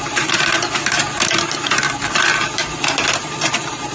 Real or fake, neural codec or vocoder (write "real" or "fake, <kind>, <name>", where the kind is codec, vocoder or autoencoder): fake, vocoder, BigVGAN v2